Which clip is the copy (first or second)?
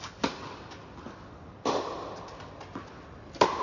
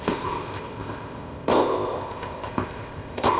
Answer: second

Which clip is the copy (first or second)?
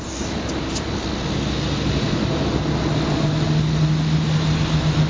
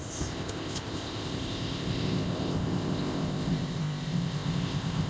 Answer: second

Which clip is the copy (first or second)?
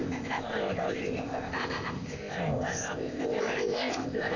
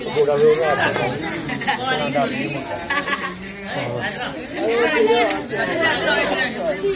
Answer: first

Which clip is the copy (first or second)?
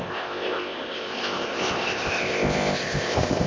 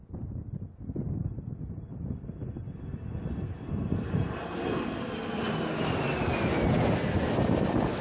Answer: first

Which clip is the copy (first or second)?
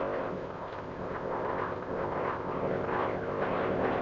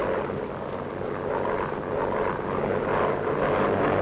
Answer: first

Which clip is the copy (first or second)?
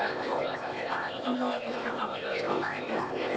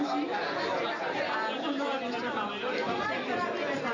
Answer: first